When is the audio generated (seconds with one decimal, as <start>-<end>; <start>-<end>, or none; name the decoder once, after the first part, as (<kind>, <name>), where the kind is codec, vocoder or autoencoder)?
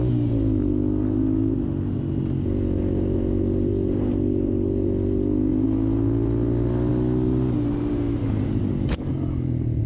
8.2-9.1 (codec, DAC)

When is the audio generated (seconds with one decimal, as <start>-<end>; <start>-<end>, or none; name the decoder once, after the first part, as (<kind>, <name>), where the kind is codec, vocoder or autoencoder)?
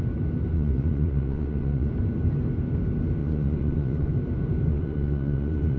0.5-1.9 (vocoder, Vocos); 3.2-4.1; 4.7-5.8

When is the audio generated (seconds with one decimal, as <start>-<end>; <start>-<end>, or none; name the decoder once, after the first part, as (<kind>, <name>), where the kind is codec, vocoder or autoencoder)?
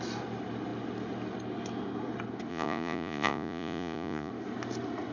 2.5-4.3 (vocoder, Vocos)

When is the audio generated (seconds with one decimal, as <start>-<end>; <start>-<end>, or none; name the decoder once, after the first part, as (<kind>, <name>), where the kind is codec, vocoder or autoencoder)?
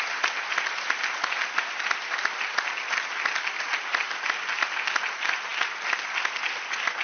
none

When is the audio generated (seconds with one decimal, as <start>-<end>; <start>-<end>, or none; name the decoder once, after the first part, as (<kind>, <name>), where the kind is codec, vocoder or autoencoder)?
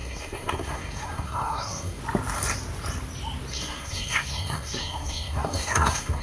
0.0-2.0 (codec, SNAC); 3.5-6.2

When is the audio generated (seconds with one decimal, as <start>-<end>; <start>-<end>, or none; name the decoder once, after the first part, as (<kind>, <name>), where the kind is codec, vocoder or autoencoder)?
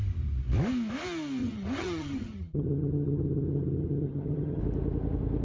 1.4-4.6 (vocoder, HiFi-GAN)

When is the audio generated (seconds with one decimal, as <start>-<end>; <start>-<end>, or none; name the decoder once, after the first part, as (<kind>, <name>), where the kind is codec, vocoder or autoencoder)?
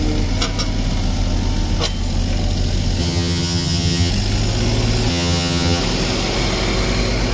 3.0-4.1 (vocoder, HiFi-GAN); 5.1-5.8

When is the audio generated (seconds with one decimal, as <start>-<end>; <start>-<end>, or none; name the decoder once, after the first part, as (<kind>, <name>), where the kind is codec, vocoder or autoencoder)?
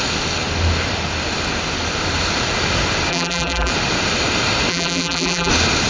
3.1-3.7 (vocoder, BigVGAN v2); 4.7-5.5